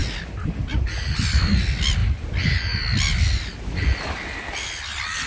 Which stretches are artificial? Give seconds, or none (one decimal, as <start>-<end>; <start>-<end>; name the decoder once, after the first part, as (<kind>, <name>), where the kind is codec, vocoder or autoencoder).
none